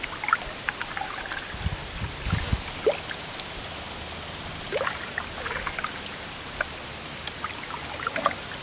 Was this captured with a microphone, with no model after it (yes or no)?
yes